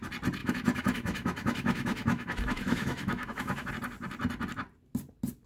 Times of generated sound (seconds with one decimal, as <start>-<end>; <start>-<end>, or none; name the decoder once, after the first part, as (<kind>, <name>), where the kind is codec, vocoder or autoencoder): 0.4-3.7 (autoencoder, DAC-VAE)